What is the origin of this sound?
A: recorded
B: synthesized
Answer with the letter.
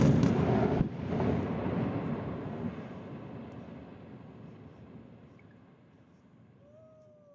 A